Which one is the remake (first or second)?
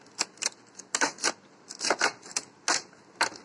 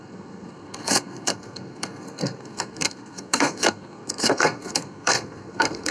second